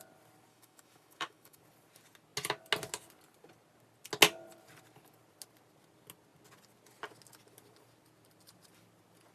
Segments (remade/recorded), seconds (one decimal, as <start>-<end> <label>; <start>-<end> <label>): 0.0-0.5 recorded; 0.5-1.6 remade; 1.6-9.3 recorded